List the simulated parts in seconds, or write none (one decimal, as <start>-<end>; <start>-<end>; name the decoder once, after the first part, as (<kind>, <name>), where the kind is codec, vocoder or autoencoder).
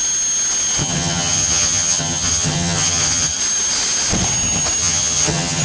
0.8-3.4 (vocoder, HiFi-GAN); 4.8-5.6